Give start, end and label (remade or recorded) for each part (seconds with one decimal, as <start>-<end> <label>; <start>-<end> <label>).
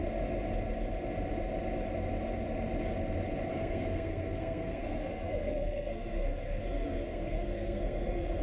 0.0-3.5 recorded; 3.5-8.4 remade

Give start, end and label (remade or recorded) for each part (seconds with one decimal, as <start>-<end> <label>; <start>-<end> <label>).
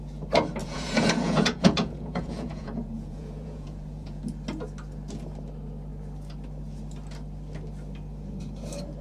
0.0-0.6 recorded; 0.6-4.2 remade; 4.2-9.0 recorded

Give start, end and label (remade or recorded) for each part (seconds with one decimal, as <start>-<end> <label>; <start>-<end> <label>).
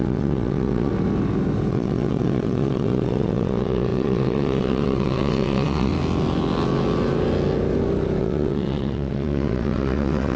0.0-0.9 remade; 0.9-1.7 recorded; 1.7-5.9 remade; 5.9-8.2 recorded; 8.2-10.4 remade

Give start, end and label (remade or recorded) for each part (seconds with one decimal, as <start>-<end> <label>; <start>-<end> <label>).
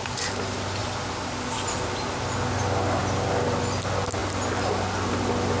0.0-0.8 recorded; 0.8-1.8 remade; 1.8-5.6 recorded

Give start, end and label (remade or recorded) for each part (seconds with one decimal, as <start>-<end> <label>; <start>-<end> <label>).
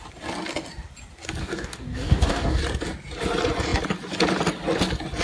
0.0-1.4 recorded; 1.4-2.6 remade; 2.6-5.2 recorded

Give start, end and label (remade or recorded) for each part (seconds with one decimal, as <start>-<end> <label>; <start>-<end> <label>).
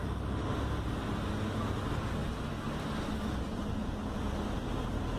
0.0-3.8 recorded; 3.8-4.3 remade; 4.3-5.2 recorded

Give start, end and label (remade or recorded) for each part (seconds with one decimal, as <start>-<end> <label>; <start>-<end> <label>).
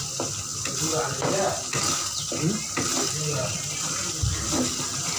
0.0-5.2 recorded